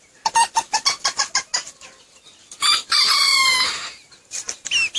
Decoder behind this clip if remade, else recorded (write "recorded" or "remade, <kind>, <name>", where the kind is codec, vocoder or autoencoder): recorded